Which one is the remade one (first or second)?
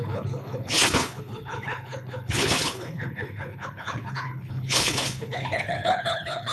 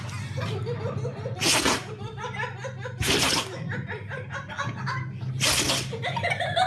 first